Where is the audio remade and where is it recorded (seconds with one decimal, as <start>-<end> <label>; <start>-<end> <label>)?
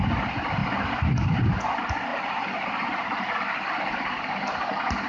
0.0-5.1 recorded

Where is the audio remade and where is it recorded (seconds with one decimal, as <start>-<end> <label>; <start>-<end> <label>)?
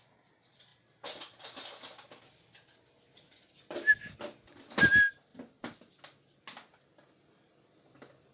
0.0-8.3 recorded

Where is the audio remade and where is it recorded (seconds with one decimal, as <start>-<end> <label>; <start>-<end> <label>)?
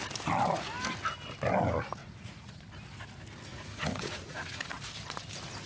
0.0-2.0 recorded; 2.0-2.6 remade; 2.6-3.5 recorded; 3.5-4.8 remade; 4.8-5.7 recorded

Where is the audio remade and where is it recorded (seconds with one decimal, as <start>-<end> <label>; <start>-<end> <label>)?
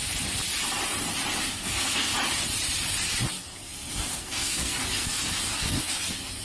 0.0-1.4 recorded; 1.4-2.1 remade; 2.1-3.3 recorded; 3.3-6.4 remade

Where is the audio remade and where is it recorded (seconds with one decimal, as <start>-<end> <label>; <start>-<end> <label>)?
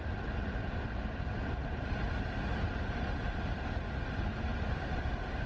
0.0-1.6 recorded; 1.6-3.3 remade; 3.3-4.5 recorded; 4.5-5.0 remade; 5.0-5.5 recorded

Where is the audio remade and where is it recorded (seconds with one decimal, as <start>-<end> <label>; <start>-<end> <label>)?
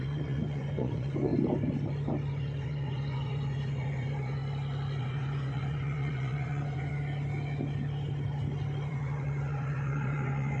0.0-1.3 remade; 1.3-2.3 recorded; 2.3-4.4 remade; 4.4-5.0 recorded; 5.0-7.0 remade; 7.0-8.9 recorded; 8.9-10.6 remade